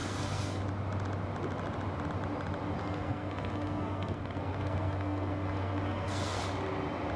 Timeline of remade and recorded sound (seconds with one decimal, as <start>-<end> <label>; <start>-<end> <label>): 0.0-0.6 remade; 0.6-2.8 recorded; 2.8-6.4 remade; 6.4-7.2 recorded

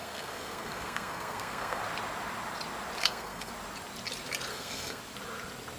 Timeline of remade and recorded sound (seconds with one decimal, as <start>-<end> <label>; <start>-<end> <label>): 0.0-1.8 remade; 1.8-3.0 recorded; 3.0-3.5 remade; 3.5-4.5 recorded; 4.5-5.0 remade; 5.0-5.8 recorded

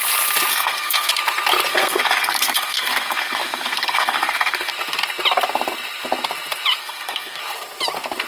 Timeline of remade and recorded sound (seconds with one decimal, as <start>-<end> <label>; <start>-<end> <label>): 0.0-0.5 recorded; 0.5-1.1 remade; 1.1-1.7 recorded; 1.7-4.7 remade; 4.7-6.8 recorded; 6.8-7.4 remade; 7.4-8.3 recorded

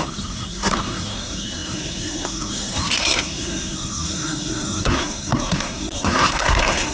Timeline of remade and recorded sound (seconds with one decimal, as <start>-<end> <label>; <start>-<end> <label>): 0.0-6.9 remade

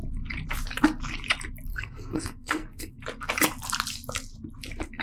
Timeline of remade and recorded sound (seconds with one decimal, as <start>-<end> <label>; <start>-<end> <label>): 0.0-1.7 recorded; 1.7-3.0 remade; 3.0-5.0 recorded